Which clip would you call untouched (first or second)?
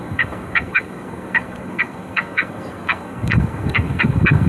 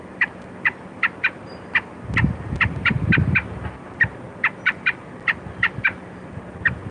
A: second